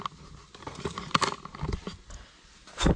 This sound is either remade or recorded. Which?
recorded